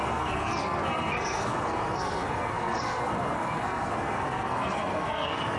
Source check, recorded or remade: remade